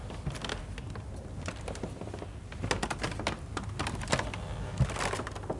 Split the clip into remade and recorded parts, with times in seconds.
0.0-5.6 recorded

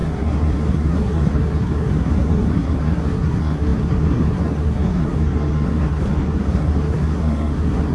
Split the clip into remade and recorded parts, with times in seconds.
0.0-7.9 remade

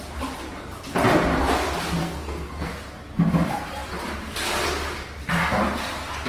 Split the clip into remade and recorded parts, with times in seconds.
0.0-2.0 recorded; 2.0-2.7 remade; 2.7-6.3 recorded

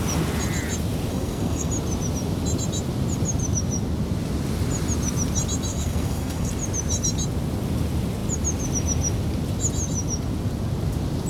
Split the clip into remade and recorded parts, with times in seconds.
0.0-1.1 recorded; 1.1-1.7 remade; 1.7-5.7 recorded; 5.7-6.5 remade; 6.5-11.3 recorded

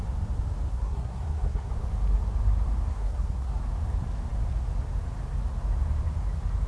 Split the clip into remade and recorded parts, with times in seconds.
0.0-0.7 recorded; 0.7-1.7 remade; 1.7-2.9 recorded; 2.9-3.6 remade; 3.6-6.7 recorded

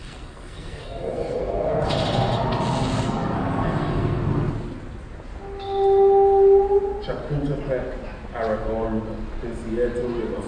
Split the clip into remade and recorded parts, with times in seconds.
0.0-1.9 remade; 1.9-2.9 recorded; 2.9-4.5 remade; 4.5-10.5 recorded